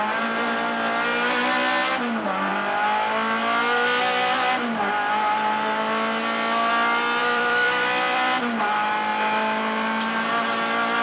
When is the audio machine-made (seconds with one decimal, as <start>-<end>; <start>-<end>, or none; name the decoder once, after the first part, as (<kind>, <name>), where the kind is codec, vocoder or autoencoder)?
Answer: 7.2-8.6 (vocoder, BigVGAN v2)